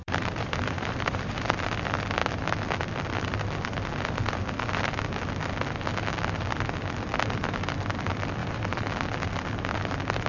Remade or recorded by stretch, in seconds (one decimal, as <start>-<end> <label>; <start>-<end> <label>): 0.0-1.4 remade; 1.4-8.4 recorded; 8.4-8.9 remade; 8.9-10.3 recorded